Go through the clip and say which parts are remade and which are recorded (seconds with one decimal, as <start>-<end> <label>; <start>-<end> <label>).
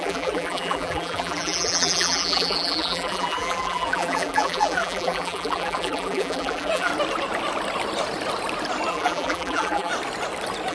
0.0-6.9 remade; 6.9-8.9 recorded; 8.9-9.9 remade; 9.9-10.7 recorded